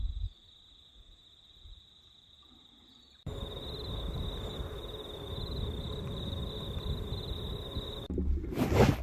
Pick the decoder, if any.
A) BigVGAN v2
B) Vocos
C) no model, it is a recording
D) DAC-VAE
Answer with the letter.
C